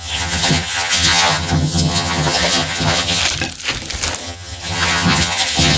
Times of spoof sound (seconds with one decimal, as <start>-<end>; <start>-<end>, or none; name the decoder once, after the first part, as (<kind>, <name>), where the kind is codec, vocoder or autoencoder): 0.0-3.2 (vocoder, HiFi-GAN); 4.2-5.8